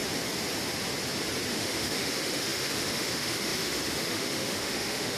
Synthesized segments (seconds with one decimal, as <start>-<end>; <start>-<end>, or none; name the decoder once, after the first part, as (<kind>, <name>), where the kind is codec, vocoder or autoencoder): 1.5-5.2 (autoencoder, DAC-VAE)